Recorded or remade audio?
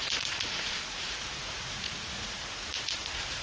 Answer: remade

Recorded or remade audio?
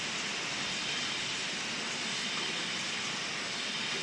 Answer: recorded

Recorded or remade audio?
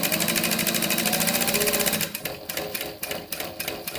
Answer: recorded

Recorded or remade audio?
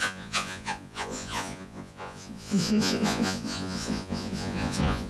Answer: remade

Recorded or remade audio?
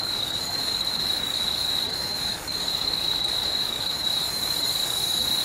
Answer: remade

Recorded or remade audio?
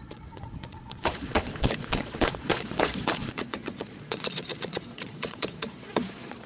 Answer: remade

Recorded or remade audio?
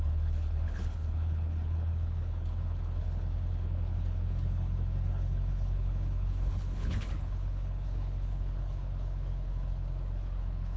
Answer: remade